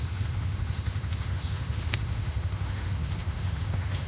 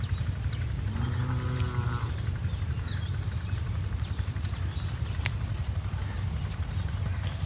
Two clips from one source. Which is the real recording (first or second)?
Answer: second